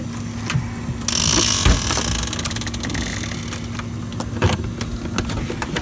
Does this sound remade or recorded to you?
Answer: recorded